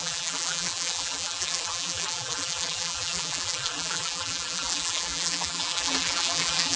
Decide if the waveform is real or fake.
fake